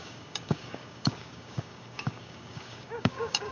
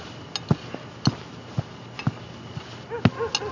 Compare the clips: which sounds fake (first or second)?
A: first